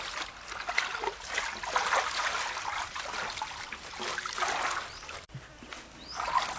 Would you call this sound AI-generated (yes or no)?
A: no